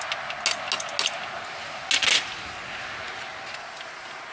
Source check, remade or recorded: recorded